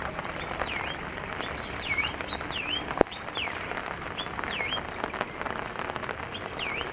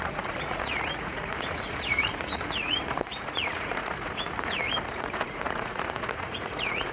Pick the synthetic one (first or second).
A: second